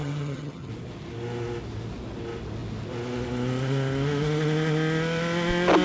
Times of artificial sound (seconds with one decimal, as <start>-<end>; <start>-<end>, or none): 0.0-0.7